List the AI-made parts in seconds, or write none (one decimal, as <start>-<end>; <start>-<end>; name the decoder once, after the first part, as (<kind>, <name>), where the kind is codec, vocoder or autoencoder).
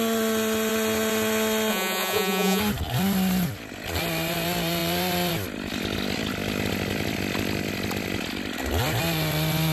1.7-2.6 (vocoder, Vocos)